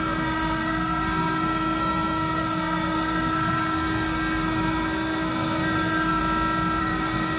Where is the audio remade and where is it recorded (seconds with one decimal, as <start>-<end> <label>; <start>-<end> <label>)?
0.0-6.2 remade; 6.2-6.8 recorded; 6.8-7.4 remade